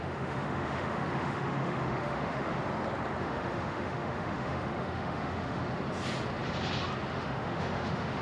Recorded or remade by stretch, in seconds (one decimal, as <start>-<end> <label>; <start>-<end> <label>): 0.0-2.6 remade; 2.6-3.2 recorded; 3.2-5.6 remade; 5.6-7.1 recorded; 7.1-8.2 remade